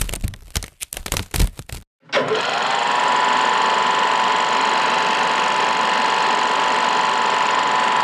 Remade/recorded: recorded